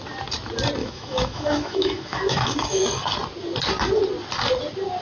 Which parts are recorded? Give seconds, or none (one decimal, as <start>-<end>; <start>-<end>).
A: 0.0-0.8; 2.8-5.0